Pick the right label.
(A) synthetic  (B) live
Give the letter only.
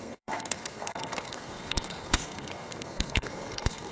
A